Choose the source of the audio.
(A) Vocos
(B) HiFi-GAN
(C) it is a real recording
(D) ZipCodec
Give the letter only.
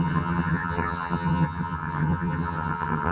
B